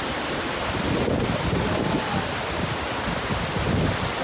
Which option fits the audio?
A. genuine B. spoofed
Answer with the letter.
A